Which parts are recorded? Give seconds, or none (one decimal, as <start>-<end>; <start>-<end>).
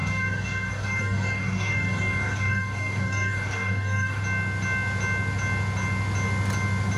4.2-7.0